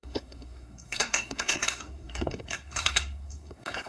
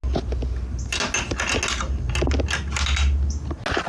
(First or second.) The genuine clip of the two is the second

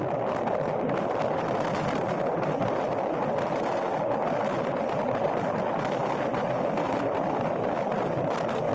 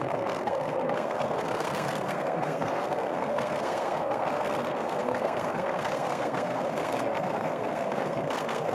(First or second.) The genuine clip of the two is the first